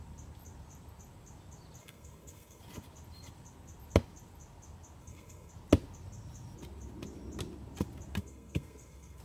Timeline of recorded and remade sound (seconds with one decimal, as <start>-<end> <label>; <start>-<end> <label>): 0.0-1.8 recorded; 1.8-2.6 remade; 2.6-5.0 recorded; 5.0-5.5 remade; 5.5-8.2 recorded; 8.2-9.2 remade